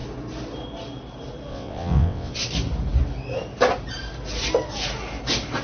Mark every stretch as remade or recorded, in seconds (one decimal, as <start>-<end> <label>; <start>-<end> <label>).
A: 0.0-1.5 recorded; 1.5-2.3 remade; 2.3-5.6 recorded